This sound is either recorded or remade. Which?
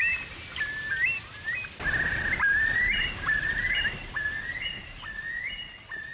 recorded